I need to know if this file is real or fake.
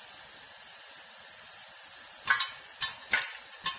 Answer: real